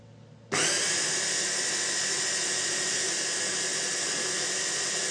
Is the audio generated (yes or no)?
no